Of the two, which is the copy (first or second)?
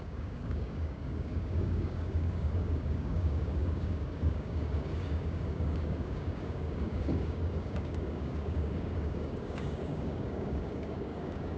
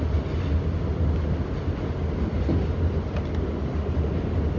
first